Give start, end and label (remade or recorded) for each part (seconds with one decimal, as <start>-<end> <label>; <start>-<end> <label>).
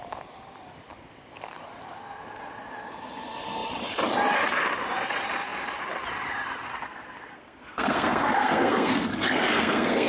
0.0-6.7 recorded; 6.7-10.1 remade